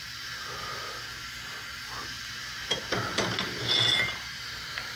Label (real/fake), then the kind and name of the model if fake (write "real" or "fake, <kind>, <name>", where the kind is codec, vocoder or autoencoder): real